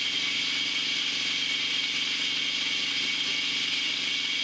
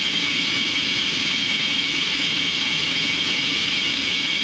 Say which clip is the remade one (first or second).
second